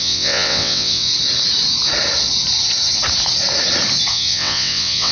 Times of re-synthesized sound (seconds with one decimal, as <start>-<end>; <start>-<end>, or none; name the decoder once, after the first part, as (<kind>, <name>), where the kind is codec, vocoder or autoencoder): 0.0-1.1 (vocoder, WaveNeXt); 4.1-5.1

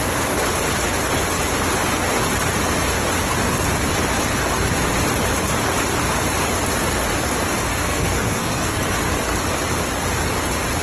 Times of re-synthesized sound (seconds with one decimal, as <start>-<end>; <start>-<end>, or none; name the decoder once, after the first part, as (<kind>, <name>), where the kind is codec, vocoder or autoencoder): 7.7-9.0 (codec, SNAC)